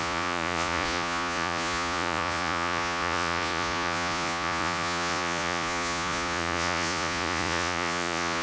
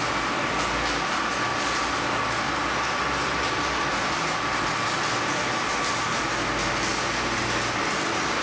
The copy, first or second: first